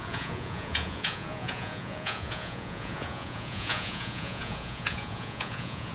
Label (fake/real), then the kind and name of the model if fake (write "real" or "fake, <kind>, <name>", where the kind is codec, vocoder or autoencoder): fake, vocoder, Vocos